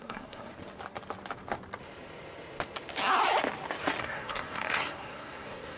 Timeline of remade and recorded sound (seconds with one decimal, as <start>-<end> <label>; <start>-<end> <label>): 0.0-0.5 remade; 0.5-4.0 recorded; 4.0-5.8 remade